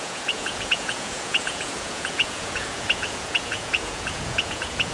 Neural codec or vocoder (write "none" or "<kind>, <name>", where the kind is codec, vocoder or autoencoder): vocoder, Vocos